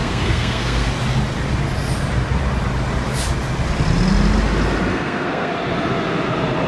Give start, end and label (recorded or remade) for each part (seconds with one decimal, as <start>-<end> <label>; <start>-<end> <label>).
0.0-0.9 remade; 0.9-4.9 recorded; 4.9-5.5 remade; 5.5-6.7 recorded